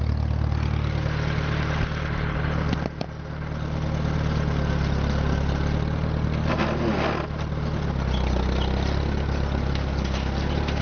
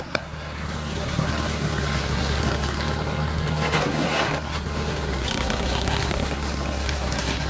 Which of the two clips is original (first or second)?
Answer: first